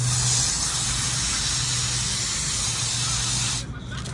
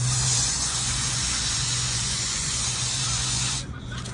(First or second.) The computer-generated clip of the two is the second